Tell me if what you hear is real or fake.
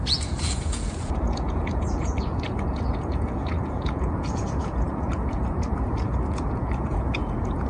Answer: fake